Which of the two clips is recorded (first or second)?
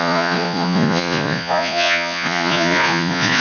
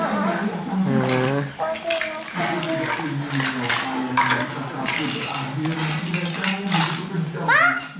second